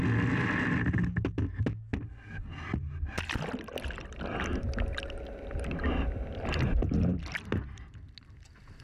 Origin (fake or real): real